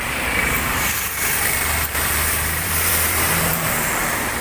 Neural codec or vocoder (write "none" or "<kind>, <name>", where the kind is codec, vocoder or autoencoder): vocoder, BigVGAN v2